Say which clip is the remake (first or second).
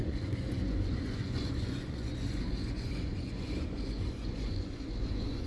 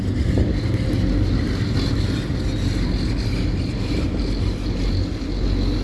first